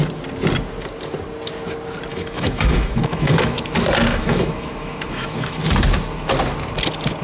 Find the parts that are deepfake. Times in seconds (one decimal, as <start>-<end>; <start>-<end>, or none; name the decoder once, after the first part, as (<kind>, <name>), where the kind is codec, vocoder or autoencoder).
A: 2.1-3.6 (autoencoder, DAC-VAE); 4.1-5.6